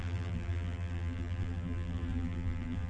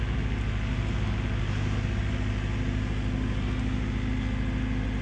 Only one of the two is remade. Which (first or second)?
first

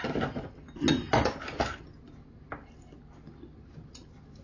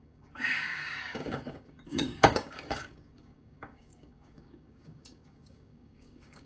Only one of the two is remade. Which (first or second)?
second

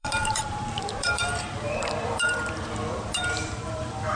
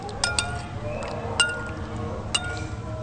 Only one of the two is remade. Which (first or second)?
first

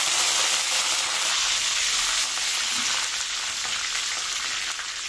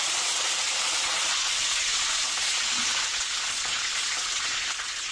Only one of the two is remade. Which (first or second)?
second